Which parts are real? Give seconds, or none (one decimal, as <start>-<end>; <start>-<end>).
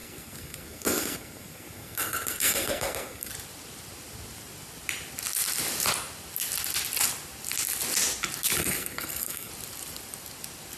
3.3-8.6; 9.5-10.8